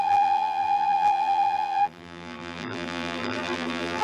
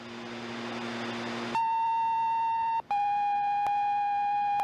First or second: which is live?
second